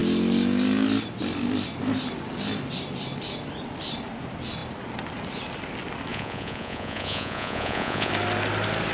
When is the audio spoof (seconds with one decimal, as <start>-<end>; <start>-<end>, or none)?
6.1-8.1